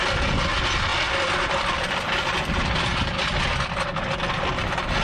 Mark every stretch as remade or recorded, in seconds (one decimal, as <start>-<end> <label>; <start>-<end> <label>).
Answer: 0.0-0.9 recorded; 0.9-1.9 remade; 1.9-5.0 recorded